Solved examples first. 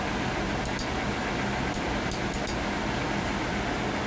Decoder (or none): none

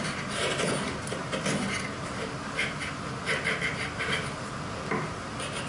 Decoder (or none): none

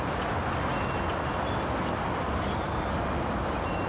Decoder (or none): none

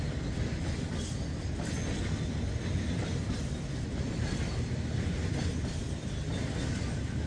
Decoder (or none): none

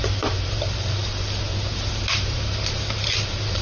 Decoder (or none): vocoder, BigVGAN v2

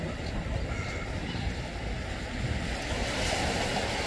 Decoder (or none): none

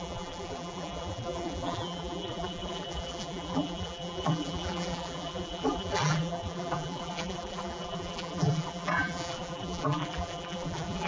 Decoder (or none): vocoder, BigVGAN v2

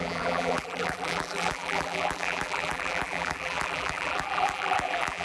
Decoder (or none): vocoder, BigVGAN v2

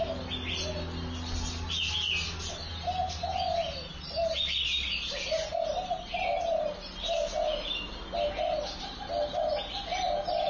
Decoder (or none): none